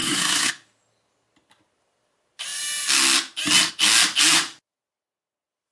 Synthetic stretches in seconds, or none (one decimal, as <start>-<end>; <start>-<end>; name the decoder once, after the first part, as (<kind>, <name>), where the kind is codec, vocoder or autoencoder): 0.0-0.5 (codec, SNAC)